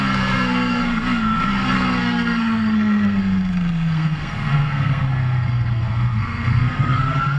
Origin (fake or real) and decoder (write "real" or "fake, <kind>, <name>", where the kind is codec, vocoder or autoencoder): fake, codec, SNAC